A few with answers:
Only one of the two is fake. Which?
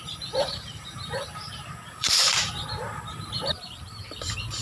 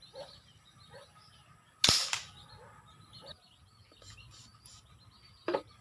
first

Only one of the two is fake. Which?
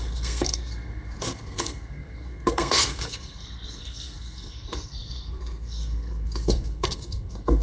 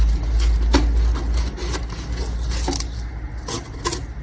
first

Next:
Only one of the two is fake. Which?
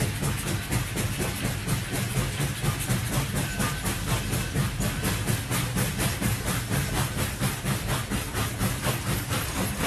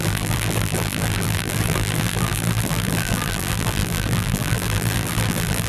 second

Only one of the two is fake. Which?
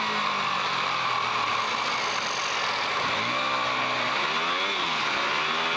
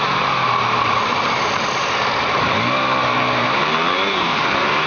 second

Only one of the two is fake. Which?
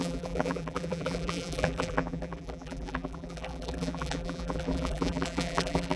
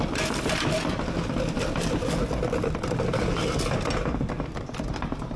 first